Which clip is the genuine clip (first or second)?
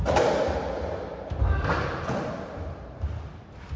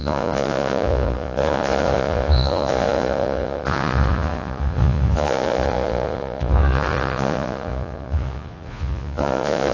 first